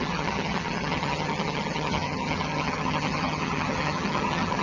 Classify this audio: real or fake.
fake